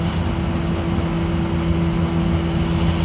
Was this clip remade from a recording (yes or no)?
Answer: no